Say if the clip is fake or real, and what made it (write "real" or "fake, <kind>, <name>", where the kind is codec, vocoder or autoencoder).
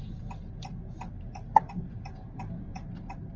real